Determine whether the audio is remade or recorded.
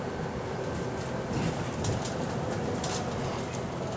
recorded